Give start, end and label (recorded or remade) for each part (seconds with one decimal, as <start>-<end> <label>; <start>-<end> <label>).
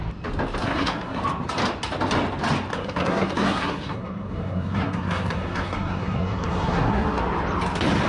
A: 0.0-0.6 recorded; 0.6-1.2 remade; 1.2-2.7 recorded; 2.7-7.2 remade; 7.2-8.1 recorded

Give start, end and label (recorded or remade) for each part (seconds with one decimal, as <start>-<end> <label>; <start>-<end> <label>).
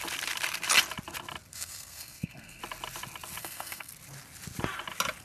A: 0.0-1.5 recorded; 1.5-2.6 remade; 2.6-3.4 recorded; 3.4-3.9 remade; 3.9-5.2 recorded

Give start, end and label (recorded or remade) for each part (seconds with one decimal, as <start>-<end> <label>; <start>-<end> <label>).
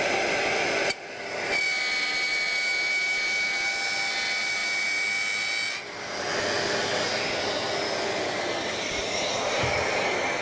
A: 0.0-10.4 recorded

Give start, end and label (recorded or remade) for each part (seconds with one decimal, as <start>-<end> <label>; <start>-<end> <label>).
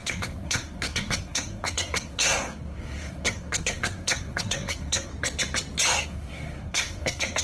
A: 0.0-5.1 remade; 5.1-6.0 recorded; 6.0-7.4 remade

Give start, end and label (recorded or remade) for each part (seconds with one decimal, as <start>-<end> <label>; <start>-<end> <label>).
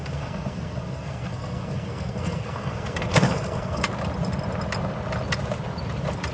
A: 0.0-3.8 remade; 3.8-6.3 recorded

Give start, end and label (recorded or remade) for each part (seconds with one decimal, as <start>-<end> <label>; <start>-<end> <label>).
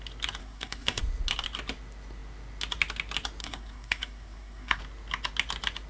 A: 0.0-0.4 recorded; 0.4-1.0 remade; 1.0-3.4 recorded; 3.4-4.8 remade; 4.8-5.9 recorded